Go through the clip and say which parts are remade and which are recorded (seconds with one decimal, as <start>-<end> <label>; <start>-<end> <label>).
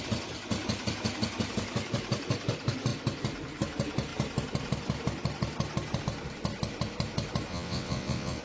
0.0-7.5 recorded; 7.5-8.4 remade